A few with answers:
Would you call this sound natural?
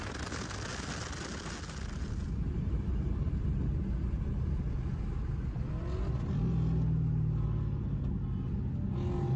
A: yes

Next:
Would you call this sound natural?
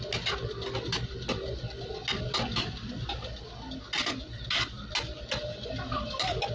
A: yes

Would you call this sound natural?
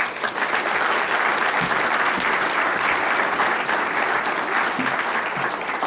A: yes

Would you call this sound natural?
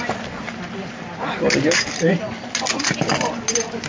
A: yes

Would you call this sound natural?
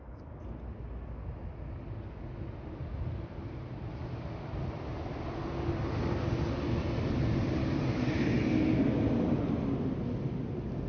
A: yes